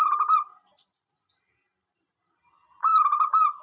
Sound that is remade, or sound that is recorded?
recorded